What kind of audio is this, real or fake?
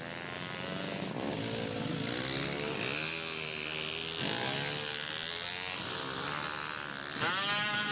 real